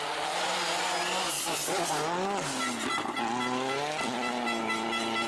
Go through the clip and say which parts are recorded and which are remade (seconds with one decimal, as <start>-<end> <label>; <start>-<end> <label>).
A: 0.0-5.3 recorded